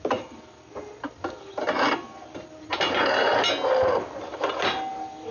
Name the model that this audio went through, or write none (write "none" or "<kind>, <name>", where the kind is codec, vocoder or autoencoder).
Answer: none